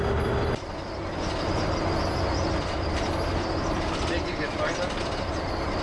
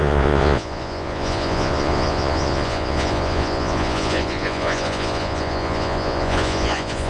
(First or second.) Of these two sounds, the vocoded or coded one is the second